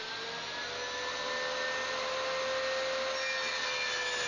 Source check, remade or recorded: recorded